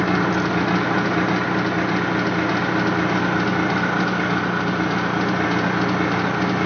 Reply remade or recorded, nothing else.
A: recorded